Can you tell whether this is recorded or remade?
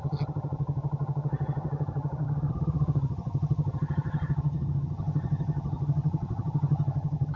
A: remade